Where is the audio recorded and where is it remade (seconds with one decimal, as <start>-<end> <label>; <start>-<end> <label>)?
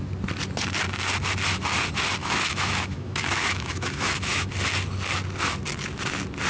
0.0-2.2 recorded; 2.2-4.5 remade; 4.5-6.5 recorded